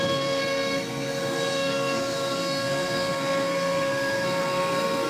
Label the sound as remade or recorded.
remade